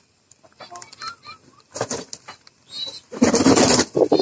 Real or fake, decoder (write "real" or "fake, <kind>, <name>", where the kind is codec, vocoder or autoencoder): real